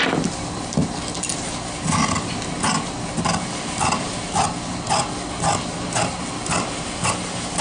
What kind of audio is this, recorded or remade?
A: recorded